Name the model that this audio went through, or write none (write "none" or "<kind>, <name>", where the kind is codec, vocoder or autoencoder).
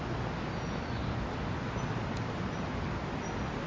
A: none